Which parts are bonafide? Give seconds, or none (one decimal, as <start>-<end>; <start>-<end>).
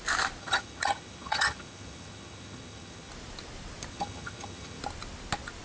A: 0.0-0.4; 3.1-3.9; 4.8-5.6